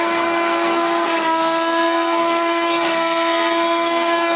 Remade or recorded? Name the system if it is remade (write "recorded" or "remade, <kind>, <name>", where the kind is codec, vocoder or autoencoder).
remade, codec, SNAC